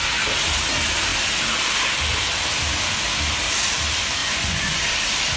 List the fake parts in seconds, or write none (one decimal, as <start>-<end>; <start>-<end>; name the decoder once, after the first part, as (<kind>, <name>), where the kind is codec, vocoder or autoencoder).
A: 4.2-4.8 (vocoder, Vocos)